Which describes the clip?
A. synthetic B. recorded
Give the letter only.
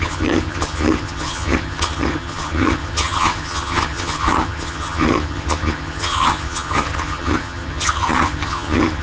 A